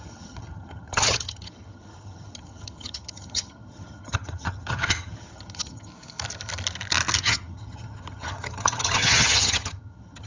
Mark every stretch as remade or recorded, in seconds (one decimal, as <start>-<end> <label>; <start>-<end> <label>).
0.0-5.9 remade; 5.9-7.2 recorded; 7.2-10.3 remade